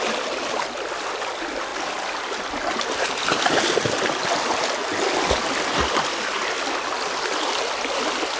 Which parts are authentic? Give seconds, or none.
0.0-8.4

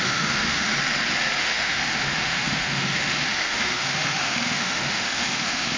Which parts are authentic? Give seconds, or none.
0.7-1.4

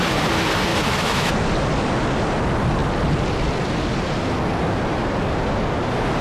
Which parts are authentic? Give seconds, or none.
0.0-0.7; 1.3-6.2